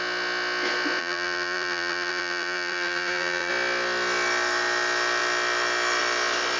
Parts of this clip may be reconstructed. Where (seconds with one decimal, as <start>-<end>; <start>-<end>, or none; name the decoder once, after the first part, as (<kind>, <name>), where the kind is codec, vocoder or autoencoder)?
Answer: 1.0-3.5 (vocoder, BigVGAN v2)